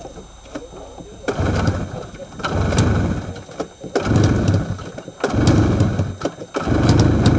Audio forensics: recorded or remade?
recorded